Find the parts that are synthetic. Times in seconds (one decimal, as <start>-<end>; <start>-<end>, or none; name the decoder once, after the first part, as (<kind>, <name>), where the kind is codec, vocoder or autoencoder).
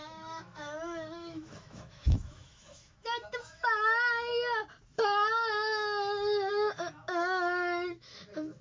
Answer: 0.0-4.3 (autoencoder, DAC-VAE); 6.5-8.6